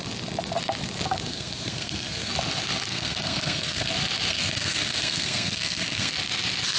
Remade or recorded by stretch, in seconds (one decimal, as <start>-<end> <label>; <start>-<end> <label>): 0.0-1.3 recorded; 1.3-2.3 remade; 2.3-2.9 recorded; 2.9-3.9 remade; 3.9-4.3 recorded; 4.3-6.1 remade; 6.1-6.8 recorded